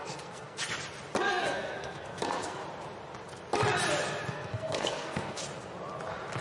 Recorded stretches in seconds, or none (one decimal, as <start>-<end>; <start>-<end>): 0.6-1.2; 2.6-4.3; 5.4-6.4